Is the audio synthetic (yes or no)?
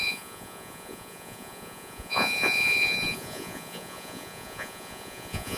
yes